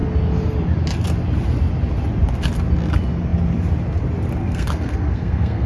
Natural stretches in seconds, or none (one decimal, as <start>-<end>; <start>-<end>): 0.0-4.4